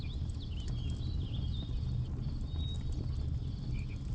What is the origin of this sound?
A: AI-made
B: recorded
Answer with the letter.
B